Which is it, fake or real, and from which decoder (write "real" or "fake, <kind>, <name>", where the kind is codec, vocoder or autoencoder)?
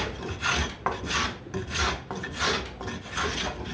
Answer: real